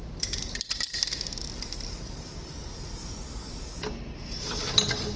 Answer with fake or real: real